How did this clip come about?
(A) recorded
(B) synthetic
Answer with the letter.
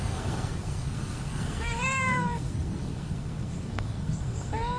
B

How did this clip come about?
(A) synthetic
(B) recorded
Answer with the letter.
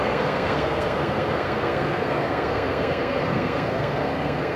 A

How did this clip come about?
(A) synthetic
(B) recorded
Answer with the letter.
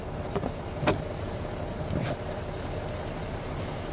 B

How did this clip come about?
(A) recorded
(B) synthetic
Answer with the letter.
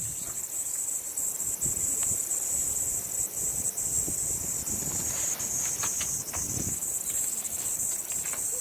A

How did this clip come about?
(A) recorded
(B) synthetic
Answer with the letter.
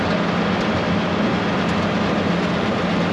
A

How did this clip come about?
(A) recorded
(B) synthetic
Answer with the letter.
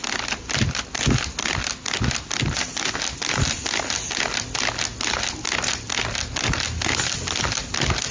A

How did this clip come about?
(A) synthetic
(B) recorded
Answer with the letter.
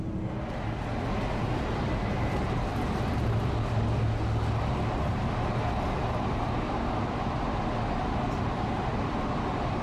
B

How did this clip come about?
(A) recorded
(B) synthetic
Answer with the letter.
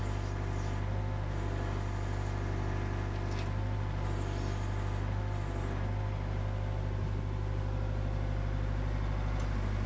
A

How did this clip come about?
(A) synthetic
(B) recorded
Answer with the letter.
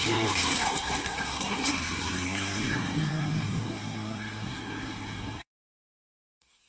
A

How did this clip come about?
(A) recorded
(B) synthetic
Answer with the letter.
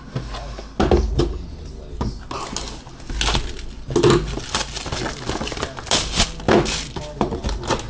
A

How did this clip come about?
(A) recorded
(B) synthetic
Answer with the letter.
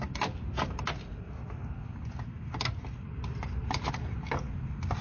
A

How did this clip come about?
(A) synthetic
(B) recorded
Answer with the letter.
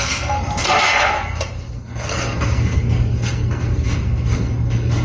A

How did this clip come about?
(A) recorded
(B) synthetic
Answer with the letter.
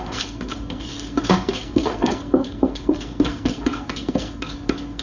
B